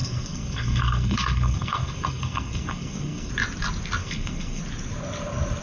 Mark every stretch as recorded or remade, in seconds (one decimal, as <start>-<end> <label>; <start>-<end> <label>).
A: 0.0-3.3 remade; 3.3-4.0 recorded; 4.0-4.6 remade; 4.6-5.6 recorded